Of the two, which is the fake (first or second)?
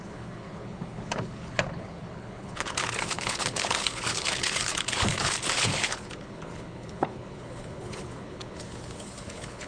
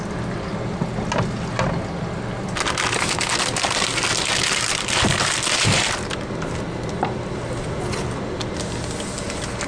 first